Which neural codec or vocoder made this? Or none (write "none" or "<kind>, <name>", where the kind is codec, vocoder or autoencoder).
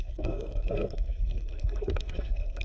codec, SNAC